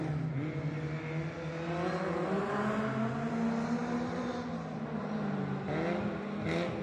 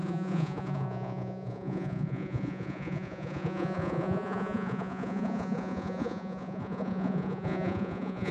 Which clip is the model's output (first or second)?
second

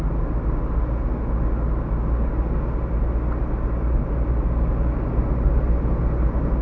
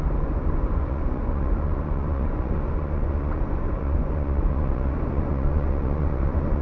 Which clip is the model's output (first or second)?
second